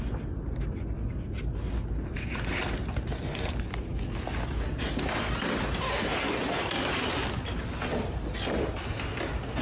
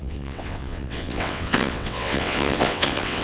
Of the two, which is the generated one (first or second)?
second